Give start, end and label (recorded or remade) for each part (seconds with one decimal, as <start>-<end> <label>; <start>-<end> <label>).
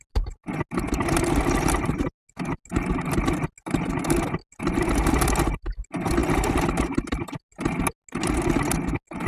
0.0-9.3 recorded